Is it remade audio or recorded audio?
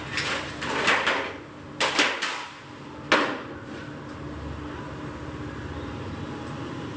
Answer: recorded